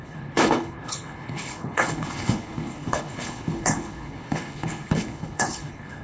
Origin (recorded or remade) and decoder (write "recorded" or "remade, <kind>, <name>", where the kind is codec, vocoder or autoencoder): remade, codec, HILCodec